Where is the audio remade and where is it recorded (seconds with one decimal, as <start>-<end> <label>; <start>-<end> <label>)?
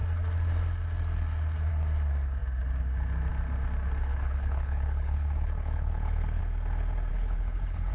0.0-4.1 recorded; 4.1-6.4 remade; 6.4-7.1 recorded; 7.1-7.9 remade